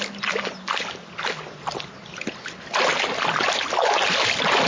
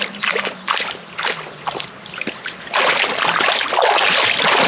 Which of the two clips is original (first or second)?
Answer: first